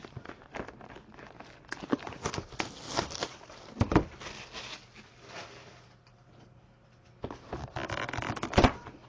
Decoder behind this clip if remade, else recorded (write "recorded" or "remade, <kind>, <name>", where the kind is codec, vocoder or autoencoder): recorded